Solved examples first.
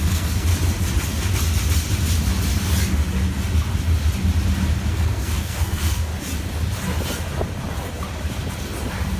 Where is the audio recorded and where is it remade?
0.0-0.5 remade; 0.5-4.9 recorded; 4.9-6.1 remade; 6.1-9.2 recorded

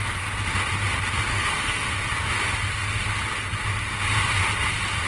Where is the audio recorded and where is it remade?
0.0-1.3 recorded; 1.3-1.9 remade; 1.9-5.1 recorded

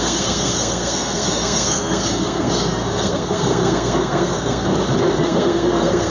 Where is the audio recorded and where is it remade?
0.0-4.7 remade; 4.7-5.2 recorded; 5.2-6.1 remade